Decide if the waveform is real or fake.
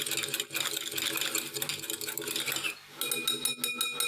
real